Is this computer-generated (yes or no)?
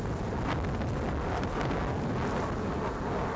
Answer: no